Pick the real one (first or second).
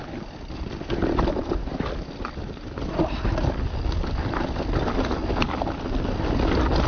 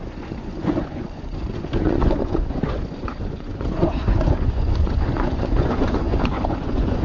first